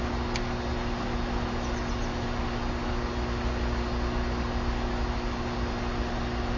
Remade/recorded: recorded